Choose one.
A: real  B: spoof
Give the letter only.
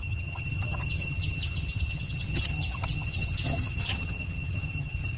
B